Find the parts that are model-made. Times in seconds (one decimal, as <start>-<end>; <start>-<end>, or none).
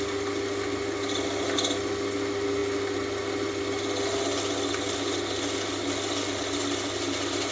none